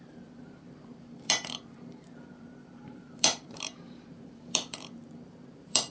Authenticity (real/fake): fake